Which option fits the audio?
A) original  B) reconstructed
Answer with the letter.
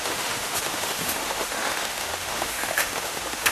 B